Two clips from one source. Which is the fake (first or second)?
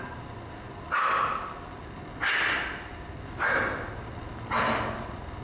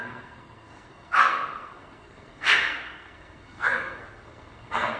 second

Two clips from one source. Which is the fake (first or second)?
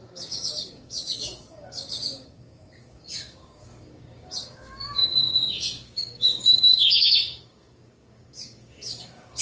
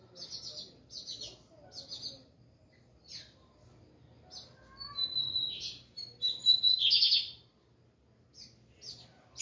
first